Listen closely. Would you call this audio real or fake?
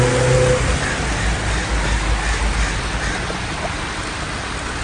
real